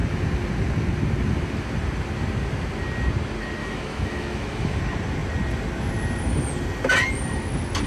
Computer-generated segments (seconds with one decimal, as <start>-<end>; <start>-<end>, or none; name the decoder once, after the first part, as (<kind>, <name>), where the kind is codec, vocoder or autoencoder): 3.6-4.8 (autoencoder, DAC-VAE)